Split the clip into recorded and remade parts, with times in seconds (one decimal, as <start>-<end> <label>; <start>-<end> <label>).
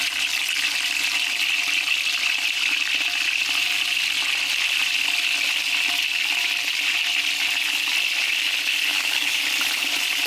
0.0-8.9 recorded; 8.9-9.4 remade; 9.4-10.3 recorded